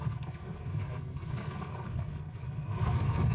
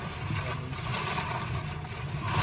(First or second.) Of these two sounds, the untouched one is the second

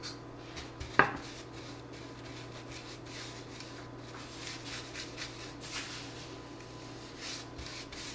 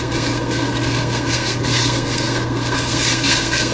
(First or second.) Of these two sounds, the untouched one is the first